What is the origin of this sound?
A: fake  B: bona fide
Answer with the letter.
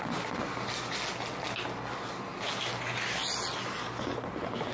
B